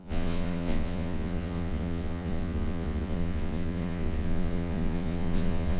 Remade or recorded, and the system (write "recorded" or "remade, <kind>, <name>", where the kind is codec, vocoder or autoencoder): remade, vocoder, Vocos